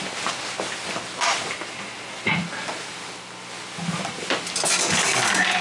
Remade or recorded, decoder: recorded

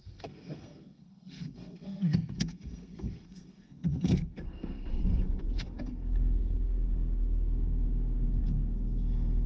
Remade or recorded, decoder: remade, codec, SNAC